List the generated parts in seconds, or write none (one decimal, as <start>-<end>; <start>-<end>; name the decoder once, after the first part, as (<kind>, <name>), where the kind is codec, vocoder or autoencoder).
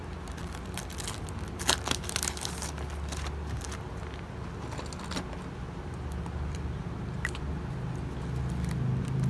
0.4-0.9 (vocoder, BigVGAN v2)